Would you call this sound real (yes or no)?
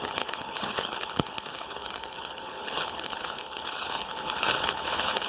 no